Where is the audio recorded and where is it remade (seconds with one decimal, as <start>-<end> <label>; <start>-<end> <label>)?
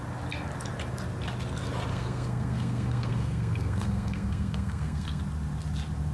0.0-1.9 recorded; 1.9-5.2 remade; 5.2-6.1 recorded